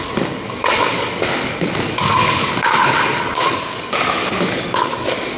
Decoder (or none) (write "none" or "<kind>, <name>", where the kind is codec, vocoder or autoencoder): codec, DAC